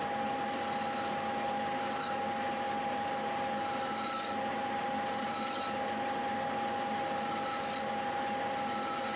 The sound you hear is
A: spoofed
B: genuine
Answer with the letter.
B